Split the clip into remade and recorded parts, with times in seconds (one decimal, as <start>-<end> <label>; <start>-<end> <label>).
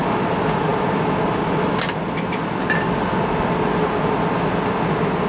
0.0-5.3 recorded